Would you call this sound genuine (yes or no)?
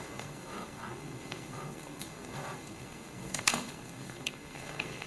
no